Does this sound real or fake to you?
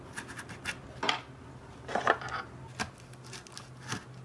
real